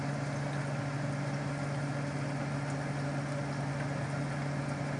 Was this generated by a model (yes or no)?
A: no